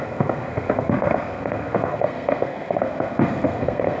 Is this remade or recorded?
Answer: remade